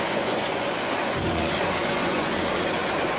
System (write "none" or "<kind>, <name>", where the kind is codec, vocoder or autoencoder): vocoder, Vocos